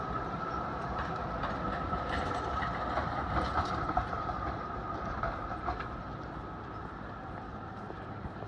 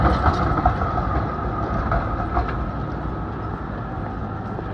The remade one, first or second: first